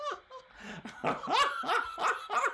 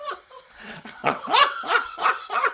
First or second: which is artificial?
second